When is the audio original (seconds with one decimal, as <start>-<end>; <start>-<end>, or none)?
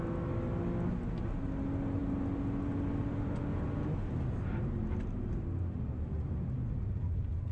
0.0-7.5